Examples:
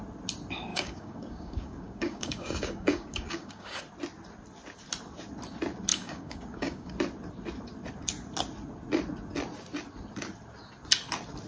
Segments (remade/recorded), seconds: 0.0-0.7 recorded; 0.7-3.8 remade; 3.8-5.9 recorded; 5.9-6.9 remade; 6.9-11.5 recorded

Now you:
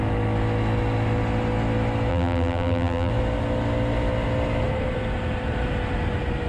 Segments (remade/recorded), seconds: 0.0-2.1 recorded; 2.1-3.1 remade; 3.1-6.5 recorded